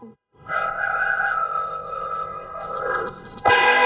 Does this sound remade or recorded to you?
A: remade